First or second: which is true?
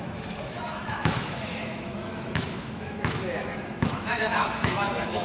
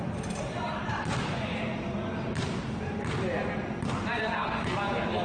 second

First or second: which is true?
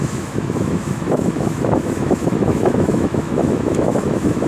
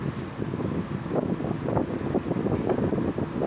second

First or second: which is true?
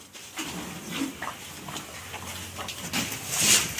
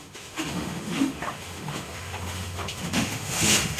first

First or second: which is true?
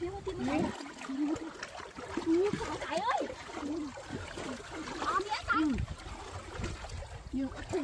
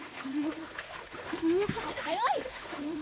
first